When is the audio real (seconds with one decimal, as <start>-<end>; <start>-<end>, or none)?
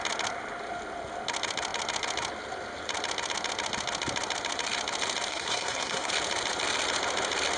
0.0-5.3; 6.1-7.6